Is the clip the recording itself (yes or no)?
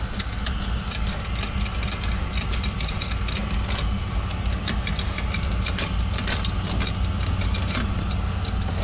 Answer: yes